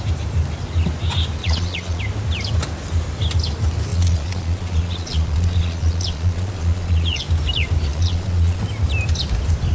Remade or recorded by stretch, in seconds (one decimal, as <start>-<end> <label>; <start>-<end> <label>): 0.0-1.4 recorded; 1.4-2.0 remade; 2.0-3.9 recorded; 3.9-7.2 remade; 7.2-7.9 recorded; 7.9-8.6 remade; 8.6-9.7 recorded